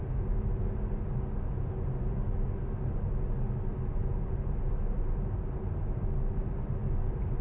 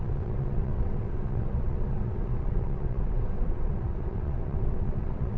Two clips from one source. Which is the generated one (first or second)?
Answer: second